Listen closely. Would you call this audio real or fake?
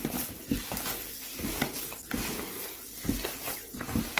real